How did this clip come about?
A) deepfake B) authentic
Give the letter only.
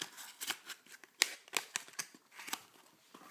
B